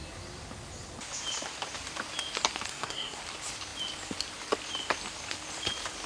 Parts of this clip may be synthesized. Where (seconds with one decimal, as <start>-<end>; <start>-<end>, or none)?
2.7-3.2